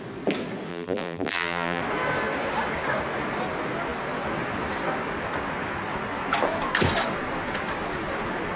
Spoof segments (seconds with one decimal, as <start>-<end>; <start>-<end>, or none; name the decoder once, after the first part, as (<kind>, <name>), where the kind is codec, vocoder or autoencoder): 0.7-1.8 (vocoder, BigVGAN v2)